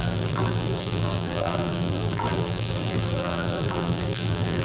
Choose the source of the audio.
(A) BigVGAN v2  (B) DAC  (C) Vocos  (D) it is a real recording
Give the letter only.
A